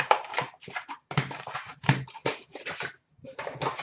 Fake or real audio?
fake